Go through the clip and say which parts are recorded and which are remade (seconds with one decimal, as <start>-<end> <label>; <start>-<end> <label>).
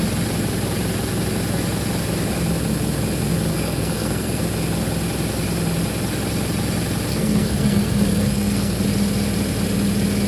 0.0-3.5 recorded; 3.5-4.4 remade; 4.4-7.1 recorded; 7.1-8.8 remade; 8.8-10.3 recorded